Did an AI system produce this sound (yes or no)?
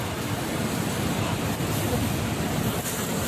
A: yes